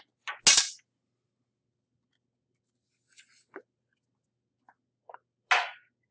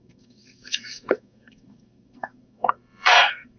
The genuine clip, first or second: first